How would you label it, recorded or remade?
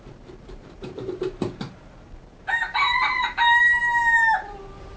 remade